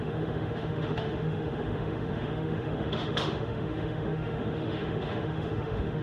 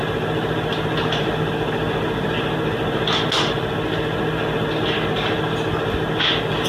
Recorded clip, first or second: second